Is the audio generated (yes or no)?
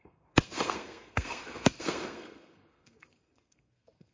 yes